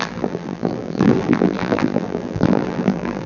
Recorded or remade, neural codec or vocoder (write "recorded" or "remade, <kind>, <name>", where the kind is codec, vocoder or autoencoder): remade, vocoder, BigVGAN v2